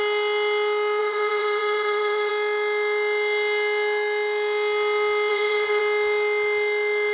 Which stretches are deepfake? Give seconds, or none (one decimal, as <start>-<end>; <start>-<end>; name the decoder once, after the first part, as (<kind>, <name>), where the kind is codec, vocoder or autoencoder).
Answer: 1.0-2.3 (vocoder, WaveNeXt); 5.3-5.8